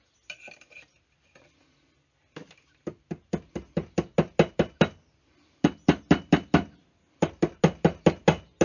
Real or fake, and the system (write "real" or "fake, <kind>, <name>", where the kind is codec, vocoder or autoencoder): real